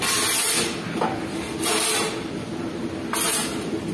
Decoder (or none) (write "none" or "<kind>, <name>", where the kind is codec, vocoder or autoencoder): none